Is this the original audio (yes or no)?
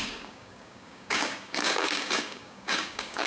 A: no